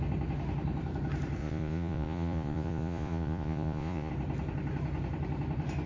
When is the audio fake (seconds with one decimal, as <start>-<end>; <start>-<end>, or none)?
1.4-4.1